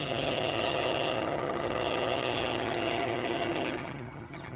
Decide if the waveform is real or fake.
fake